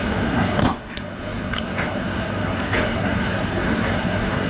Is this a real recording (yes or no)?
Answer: no